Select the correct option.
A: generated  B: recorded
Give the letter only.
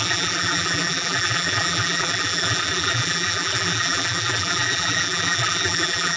A